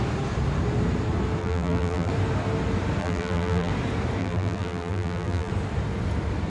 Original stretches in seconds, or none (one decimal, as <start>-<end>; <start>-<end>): 0.0-1.4; 2.1-3.0; 3.7-4.2; 5.5-6.5